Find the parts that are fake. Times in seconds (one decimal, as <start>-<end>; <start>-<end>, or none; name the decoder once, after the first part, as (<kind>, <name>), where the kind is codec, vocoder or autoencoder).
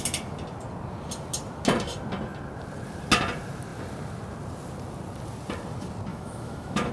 6.1-6.9 (autoencoder, DAC-VAE)